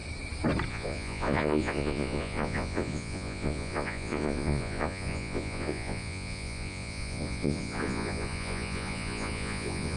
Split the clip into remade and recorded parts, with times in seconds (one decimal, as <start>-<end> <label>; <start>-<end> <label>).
0.0-0.7 recorded; 0.7-10.0 remade